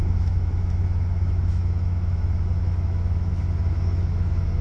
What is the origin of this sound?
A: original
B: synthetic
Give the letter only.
B